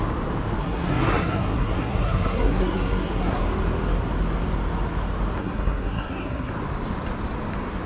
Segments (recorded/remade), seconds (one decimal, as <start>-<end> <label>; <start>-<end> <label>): 0.0-0.6 recorded; 0.6-3.4 remade; 3.4-5.4 recorded; 5.4-6.5 remade; 6.5-7.9 recorded